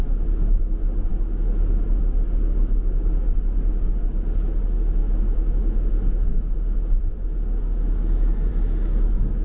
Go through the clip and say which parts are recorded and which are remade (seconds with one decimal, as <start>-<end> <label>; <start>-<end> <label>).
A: 0.0-9.4 recorded